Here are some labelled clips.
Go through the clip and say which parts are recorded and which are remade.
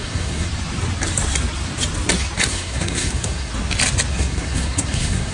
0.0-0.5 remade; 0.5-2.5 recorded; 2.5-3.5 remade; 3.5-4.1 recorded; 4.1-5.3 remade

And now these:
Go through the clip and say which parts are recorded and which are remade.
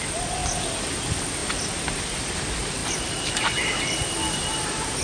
0.0-5.0 recorded